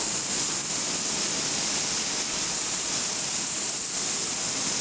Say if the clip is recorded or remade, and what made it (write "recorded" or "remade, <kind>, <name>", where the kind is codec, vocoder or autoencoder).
recorded